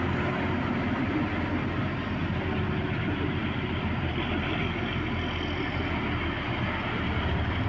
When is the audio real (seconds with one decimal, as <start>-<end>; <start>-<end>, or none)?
0.0-7.7